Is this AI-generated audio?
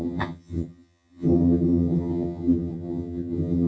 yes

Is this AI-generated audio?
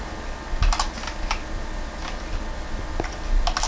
no